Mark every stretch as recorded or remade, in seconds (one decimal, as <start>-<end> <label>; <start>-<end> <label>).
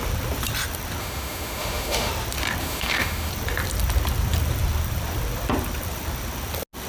0.0-1.0 recorded; 1.0-2.1 remade; 2.1-2.6 recorded; 2.6-3.3 remade; 3.3-6.9 recorded